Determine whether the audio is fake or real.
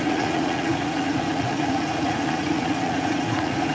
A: fake